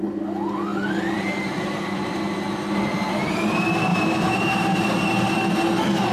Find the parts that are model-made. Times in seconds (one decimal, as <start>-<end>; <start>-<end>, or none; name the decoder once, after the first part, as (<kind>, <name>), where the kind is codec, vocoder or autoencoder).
0.7-2.2 (vocoder, BigVGAN v2); 3.9-5.3